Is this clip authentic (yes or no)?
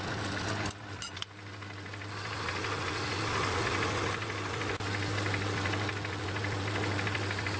yes